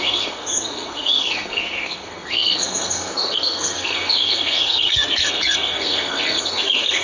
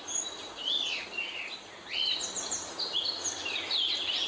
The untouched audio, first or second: second